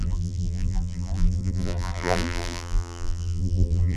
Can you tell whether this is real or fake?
fake